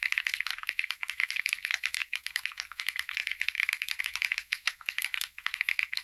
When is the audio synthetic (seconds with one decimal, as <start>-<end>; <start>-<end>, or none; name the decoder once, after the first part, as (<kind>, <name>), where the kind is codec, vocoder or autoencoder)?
0.0-6.0 (codec, SNAC)